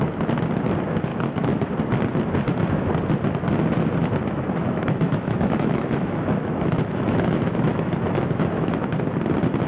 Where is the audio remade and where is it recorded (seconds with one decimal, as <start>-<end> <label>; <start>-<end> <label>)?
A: 0.0-1.1 recorded; 1.1-1.7 remade; 1.7-4.6 recorded; 4.6-9.0 remade; 9.0-9.7 recorded